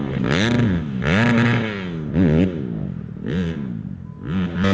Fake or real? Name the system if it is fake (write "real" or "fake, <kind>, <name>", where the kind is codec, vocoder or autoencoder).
real